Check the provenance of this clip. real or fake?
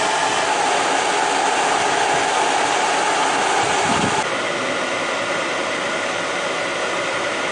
real